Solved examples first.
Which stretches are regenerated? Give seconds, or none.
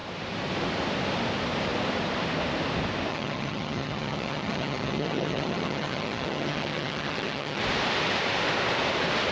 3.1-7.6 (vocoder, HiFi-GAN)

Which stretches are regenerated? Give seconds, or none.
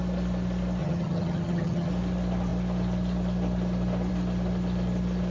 0.8-1.9 (vocoder, HiFi-GAN)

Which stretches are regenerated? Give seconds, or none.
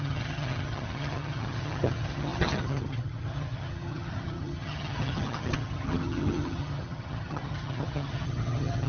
0.0-8.9 (vocoder, HiFi-GAN)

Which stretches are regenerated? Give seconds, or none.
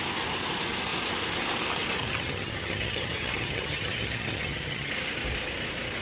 2.0-4.9 (vocoder, HiFi-GAN)